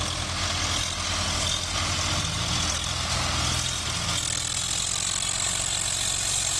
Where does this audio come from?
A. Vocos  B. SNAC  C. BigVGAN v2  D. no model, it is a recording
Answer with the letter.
D